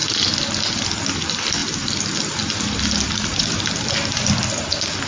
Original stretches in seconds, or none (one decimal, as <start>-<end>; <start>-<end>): 0.0-1.6; 3.7-5.1